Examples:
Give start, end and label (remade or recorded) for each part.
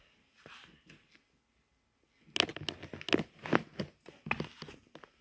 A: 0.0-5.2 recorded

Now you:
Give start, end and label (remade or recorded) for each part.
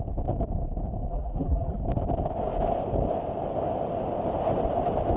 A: 0.0-1.1 recorded; 1.1-1.8 remade; 1.8-5.2 recorded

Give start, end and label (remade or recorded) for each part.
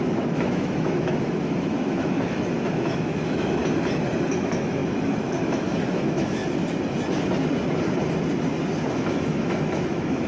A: 0.0-3.6 remade; 3.6-4.3 recorded; 4.3-6.4 remade; 6.4-8.9 recorded; 8.9-10.3 remade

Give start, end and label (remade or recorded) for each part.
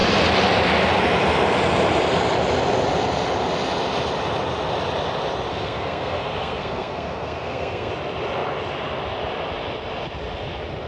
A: 0.0-5.5 recorded; 5.5-7.9 remade; 7.9-10.9 recorded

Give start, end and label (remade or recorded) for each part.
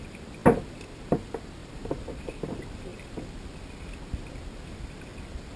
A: 0.0-1.6 recorded; 1.6-2.3 remade; 2.3-5.6 recorded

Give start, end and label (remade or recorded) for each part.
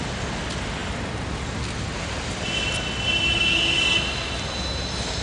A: 0.0-5.2 recorded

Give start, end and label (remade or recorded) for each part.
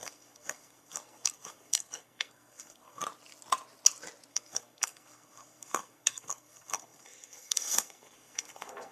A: 0.0-3.0 remade; 3.0-4.3 recorded; 4.3-8.9 remade